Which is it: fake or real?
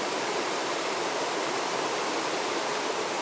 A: fake